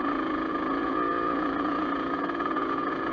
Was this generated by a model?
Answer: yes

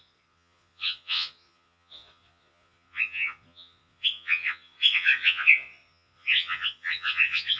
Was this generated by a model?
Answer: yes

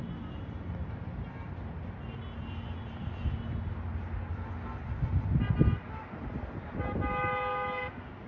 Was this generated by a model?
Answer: no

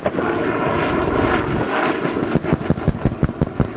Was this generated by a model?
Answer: no